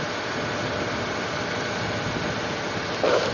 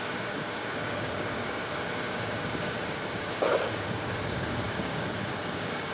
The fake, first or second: second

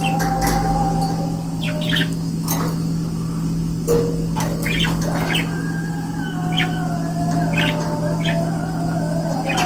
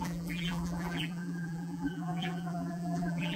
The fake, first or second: second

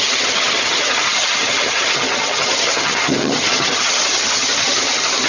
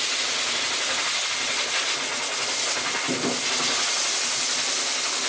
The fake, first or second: first